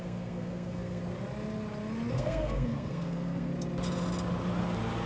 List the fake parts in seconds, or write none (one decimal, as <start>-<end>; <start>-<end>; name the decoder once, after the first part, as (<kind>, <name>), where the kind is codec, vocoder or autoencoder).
0.0-1.0 (codec, SNAC); 2.1-3.5